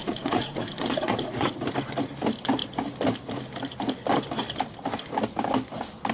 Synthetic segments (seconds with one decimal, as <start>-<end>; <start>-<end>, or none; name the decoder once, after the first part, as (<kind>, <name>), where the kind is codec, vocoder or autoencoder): 0.0-1.5 (vocoder, Vocos)